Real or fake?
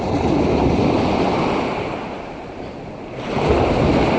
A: real